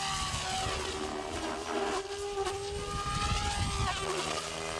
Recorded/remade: recorded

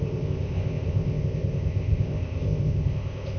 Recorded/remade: remade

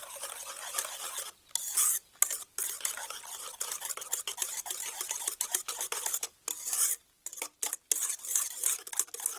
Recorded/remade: recorded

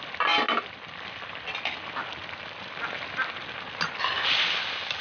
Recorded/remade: recorded